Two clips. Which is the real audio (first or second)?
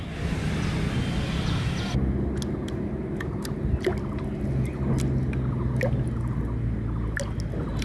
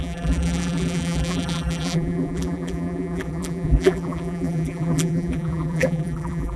first